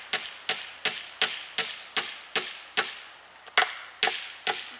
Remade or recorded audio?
recorded